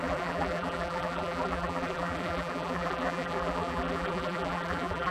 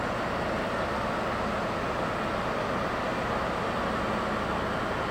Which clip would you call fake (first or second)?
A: first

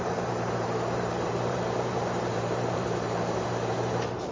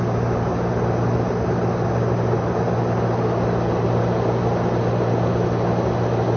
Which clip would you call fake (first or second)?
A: first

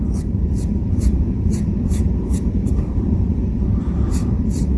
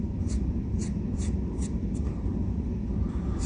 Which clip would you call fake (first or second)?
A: first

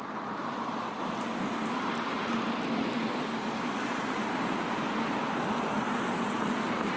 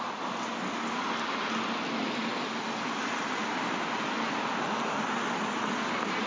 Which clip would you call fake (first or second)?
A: first